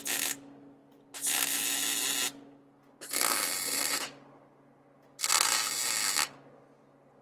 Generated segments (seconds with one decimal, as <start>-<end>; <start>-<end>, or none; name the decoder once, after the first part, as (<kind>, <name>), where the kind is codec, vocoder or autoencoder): none